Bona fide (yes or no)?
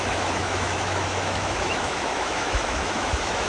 no